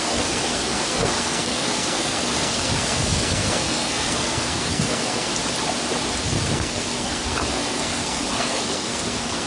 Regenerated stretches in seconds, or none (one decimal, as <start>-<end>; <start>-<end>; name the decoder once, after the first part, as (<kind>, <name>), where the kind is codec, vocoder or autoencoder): 0.0-5.3 (codec, SNAC); 6.2-9.5

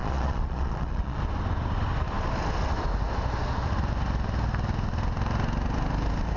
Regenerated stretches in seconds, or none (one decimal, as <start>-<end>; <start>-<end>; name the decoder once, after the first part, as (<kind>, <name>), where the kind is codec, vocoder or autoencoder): 0.0-1.2 (vocoder, Vocos)